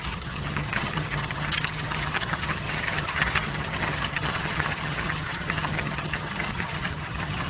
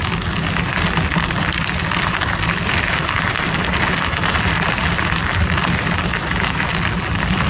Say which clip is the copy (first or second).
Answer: first